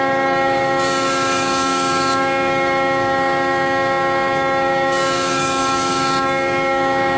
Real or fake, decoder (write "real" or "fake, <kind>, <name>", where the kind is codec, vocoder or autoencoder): fake, codec, DAC